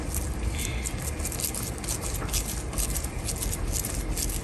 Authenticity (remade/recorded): recorded